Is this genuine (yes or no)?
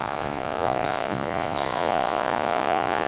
no